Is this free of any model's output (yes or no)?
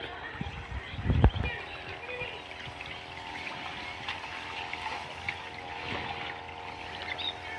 yes